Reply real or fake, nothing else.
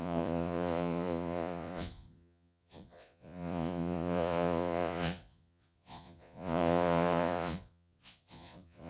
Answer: fake